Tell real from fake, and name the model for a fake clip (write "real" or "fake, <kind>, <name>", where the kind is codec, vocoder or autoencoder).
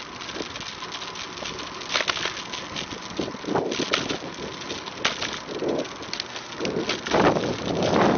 real